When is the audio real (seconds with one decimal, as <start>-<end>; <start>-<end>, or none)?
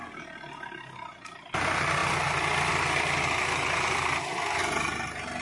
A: 0.0-5.4